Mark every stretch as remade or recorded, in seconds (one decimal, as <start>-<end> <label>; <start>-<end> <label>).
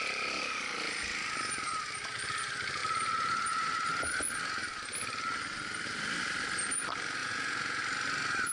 0.0-7.2 recorded; 7.2-7.8 remade; 7.8-8.5 recorded